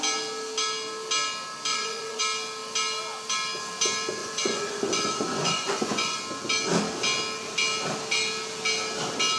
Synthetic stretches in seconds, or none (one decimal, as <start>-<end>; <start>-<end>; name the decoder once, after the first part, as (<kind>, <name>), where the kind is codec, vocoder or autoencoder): 1.7-2.2 (vocoder, Vocos); 4.2-6.2